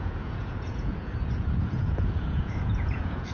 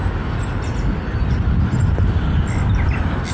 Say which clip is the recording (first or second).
second